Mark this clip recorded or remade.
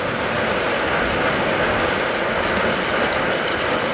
recorded